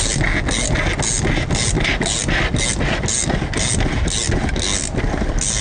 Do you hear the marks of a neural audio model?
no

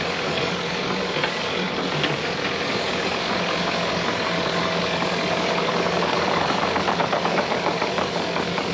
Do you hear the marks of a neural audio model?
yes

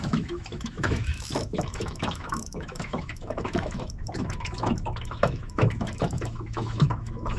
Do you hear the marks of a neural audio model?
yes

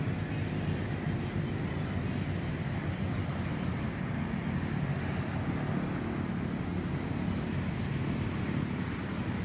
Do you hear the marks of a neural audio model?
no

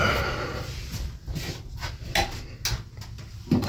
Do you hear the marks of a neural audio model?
no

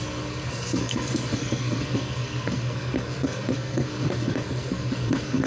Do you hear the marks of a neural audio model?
yes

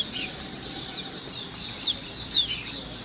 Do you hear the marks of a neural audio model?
yes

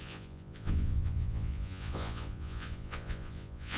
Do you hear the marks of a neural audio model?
yes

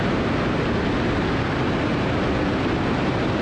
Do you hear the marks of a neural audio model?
no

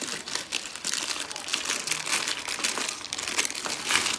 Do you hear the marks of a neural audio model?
no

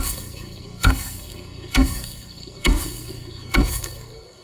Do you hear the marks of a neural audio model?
yes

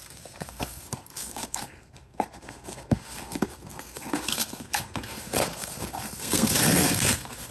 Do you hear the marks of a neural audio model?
yes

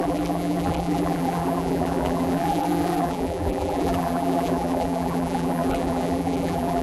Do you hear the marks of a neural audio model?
yes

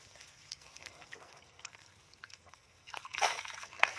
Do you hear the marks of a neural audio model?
yes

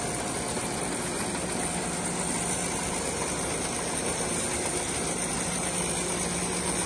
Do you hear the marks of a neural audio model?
no